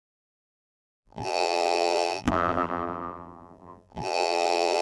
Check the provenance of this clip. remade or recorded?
remade